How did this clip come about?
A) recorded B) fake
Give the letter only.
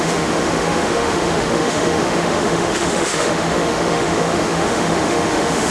B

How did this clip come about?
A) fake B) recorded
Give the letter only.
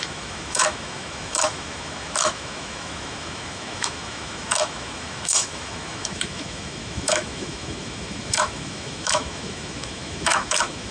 A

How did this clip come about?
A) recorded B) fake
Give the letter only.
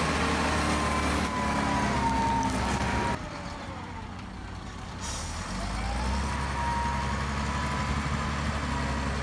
A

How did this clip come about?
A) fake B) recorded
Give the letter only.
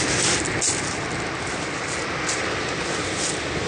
B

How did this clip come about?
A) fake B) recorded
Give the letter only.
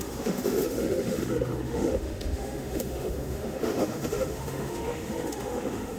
A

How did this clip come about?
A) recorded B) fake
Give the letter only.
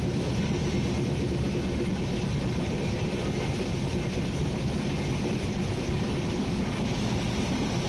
A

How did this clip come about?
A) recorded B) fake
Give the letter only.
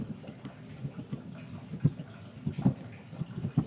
A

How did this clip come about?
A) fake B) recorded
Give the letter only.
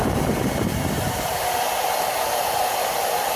B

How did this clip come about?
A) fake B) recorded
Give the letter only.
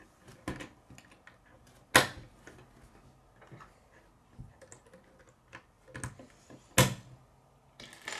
B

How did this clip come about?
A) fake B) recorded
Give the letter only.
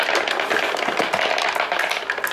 B